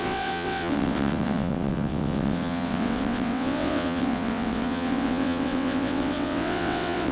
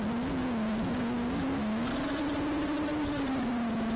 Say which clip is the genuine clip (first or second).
second